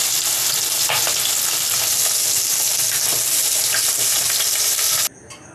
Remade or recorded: recorded